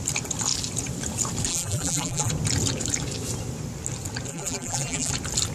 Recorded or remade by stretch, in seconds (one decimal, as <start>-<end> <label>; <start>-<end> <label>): 0.0-1.5 recorded; 1.5-2.3 remade; 2.3-4.3 recorded; 4.3-5.1 remade; 5.1-5.5 recorded